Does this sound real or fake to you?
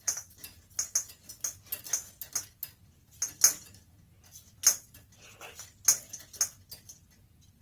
real